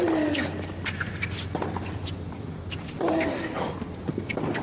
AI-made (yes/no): no